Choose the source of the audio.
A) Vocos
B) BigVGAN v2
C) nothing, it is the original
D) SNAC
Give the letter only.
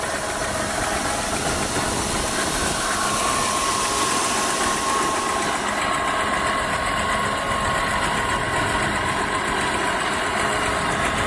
C